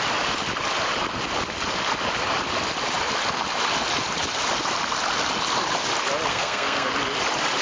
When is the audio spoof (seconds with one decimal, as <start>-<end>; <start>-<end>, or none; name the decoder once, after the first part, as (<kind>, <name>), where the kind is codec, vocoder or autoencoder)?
6.3-6.9 (codec, SNAC)